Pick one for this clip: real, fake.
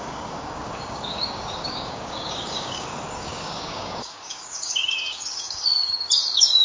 fake